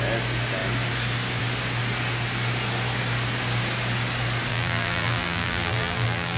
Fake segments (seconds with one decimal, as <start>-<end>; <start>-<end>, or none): 4.5-6.4